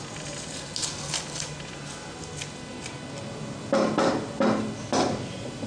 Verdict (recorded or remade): recorded